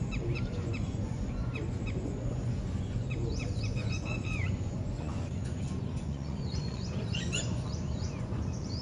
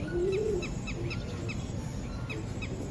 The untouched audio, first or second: second